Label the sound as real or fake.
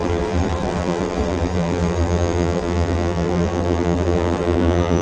fake